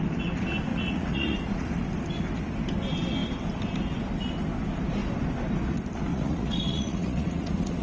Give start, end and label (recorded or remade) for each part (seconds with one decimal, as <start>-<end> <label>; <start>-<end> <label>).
0.0-0.7 recorded; 0.7-1.7 remade; 1.7-6.1 recorded; 6.1-7.8 remade

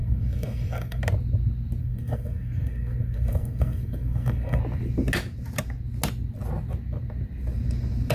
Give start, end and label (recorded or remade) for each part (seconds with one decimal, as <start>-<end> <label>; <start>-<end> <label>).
0.0-1.0 remade; 1.0-1.8 recorded; 1.8-4.6 remade; 4.6-8.1 recorded

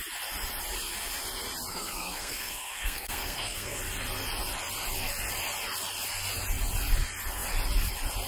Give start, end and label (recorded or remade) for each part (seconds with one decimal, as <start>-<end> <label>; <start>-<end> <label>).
0.0-1.7 recorded; 1.7-3.8 remade; 3.8-8.3 recorded

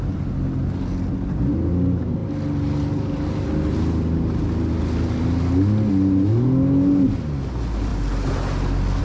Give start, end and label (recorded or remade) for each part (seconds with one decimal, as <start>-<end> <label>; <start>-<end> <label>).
0.0-9.0 recorded